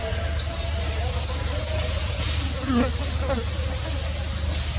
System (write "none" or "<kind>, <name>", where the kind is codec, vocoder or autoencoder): none